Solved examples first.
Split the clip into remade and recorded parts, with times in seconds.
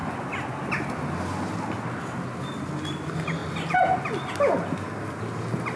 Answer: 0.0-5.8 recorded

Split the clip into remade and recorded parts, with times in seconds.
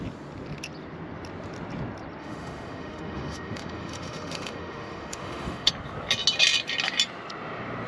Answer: 0.0-2.2 recorded; 2.2-5.7 remade; 5.7-7.9 recorded